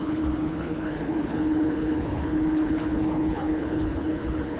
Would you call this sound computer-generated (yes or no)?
yes